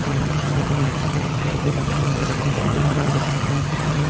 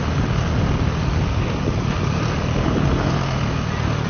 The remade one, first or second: first